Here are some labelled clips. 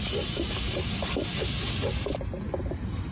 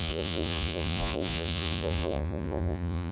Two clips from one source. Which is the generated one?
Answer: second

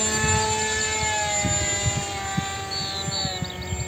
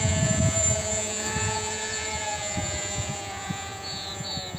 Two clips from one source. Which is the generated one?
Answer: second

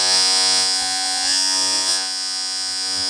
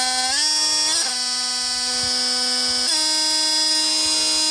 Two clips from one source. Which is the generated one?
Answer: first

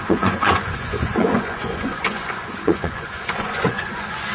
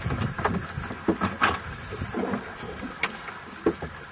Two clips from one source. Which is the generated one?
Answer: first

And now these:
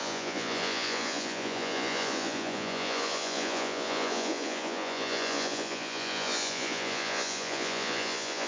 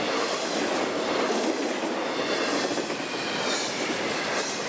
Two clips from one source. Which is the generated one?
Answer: first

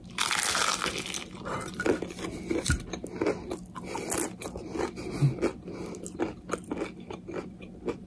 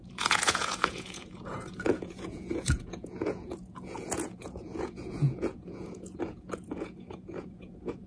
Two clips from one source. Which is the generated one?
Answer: second